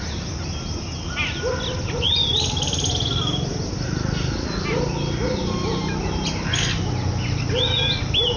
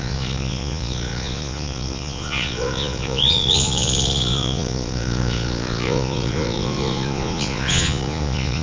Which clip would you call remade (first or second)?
second